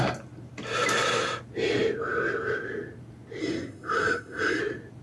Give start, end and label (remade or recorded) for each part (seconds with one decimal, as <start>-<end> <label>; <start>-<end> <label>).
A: 0.0-3.4 recorded; 3.4-4.6 remade; 4.6-5.0 recorded